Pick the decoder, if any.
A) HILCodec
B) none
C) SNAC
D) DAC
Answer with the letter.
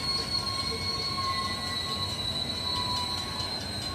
B